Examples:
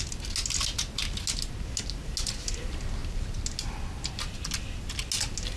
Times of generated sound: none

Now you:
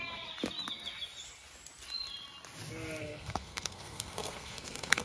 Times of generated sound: 3.0-5.0 (codec, SNAC)